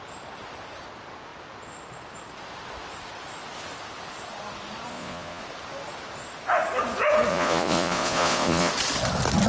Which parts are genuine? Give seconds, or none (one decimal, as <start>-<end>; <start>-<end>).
0.0-4.9; 5.4-7.3; 8.7-9.5